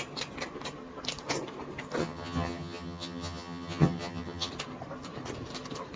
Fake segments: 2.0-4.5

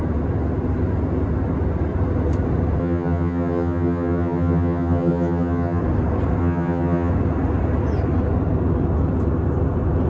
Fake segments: 2.8-5.8; 6.4-7.1

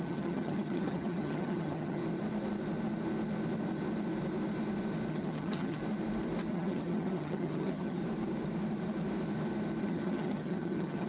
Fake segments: 0.0-2.0; 5.1-5.8; 6.5-8.0; 9.8-11.1

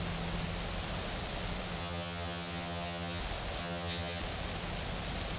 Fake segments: 1.8-3.2; 3.6-4.2

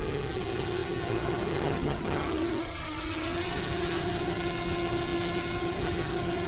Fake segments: 0.0-6.5